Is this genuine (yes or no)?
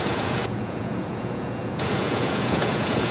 no